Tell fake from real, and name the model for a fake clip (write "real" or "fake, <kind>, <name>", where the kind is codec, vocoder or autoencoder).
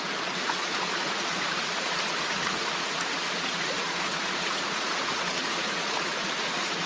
fake, vocoder, Vocos